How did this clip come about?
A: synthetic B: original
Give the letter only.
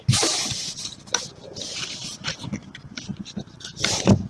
B